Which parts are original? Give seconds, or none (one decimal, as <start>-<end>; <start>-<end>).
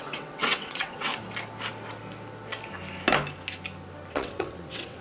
1.1-4.1